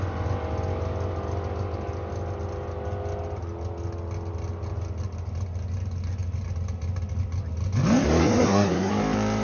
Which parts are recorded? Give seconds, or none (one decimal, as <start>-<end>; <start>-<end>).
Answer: 0.0-8.2; 8.9-9.4